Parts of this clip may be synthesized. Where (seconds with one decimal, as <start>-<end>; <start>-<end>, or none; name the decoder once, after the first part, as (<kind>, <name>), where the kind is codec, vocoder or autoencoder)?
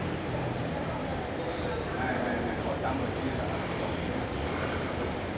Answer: 0.0-5.4 (vocoder, BigVGAN v2)